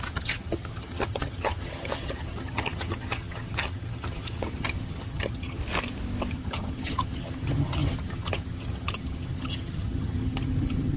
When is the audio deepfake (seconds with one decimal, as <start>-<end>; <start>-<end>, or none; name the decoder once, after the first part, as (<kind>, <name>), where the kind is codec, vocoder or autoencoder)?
0.0-5.6 (vocoder, HiFi-GAN); 6.3-11.0